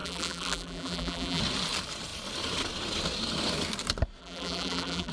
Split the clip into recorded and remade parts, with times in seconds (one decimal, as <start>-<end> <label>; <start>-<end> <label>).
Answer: 0.0-1.4 remade; 1.4-4.2 recorded; 4.2-5.1 remade